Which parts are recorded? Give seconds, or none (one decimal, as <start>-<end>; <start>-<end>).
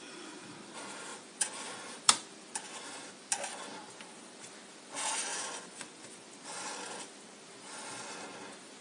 0.0-1.1; 1.7-5.3; 6.3-8.8